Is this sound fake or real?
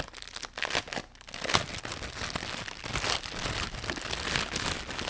real